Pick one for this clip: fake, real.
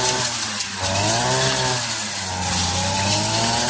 real